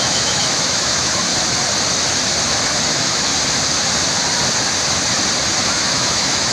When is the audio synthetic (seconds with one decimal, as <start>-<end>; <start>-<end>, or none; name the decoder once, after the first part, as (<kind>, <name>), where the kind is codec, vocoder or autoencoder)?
0.0-1.3 (autoencoder, DAC-VAE); 2.8-3.3; 5.6-6.5